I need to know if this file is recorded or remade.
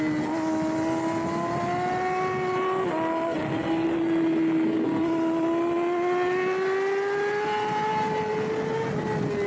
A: recorded